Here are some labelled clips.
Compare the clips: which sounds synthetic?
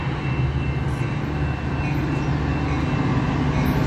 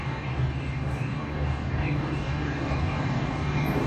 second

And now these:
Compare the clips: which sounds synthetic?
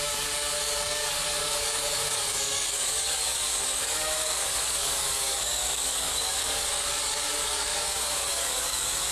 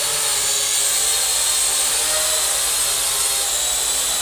first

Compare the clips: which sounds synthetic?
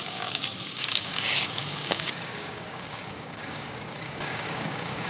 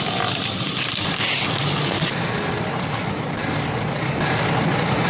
first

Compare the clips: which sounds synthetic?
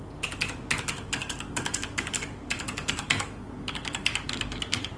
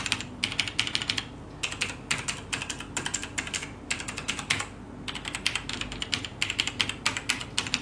first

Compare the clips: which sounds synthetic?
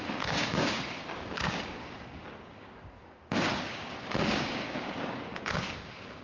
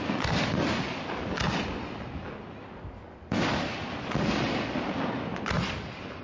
first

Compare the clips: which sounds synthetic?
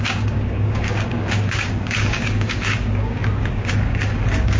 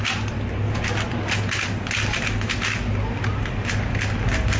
first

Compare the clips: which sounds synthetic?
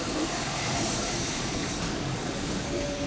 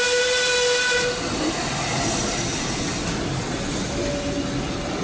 first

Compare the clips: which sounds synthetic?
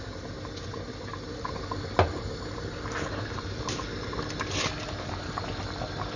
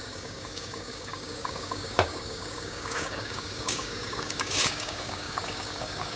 second